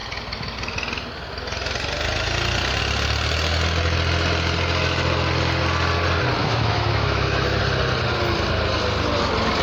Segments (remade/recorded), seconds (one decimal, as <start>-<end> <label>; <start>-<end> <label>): 0.0-6.4 recorded; 6.4-7.6 remade; 7.6-9.6 recorded